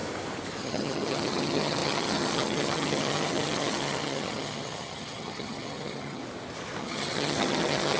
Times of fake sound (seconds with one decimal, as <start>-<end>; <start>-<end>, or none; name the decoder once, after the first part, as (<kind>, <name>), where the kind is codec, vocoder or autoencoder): 0.6-6.2 (vocoder, HiFi-GAN); 6.8-8.0